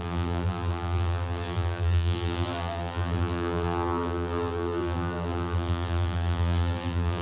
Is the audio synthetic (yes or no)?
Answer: yes